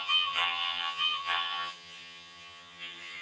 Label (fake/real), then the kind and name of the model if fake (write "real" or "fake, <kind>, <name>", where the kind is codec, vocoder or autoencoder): fake, vocoder, HiFi-GAN